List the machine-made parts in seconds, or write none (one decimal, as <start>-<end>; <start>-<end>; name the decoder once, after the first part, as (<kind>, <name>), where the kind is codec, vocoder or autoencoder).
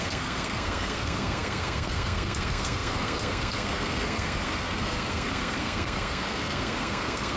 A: 0.0-7.4 (codec, SNAC)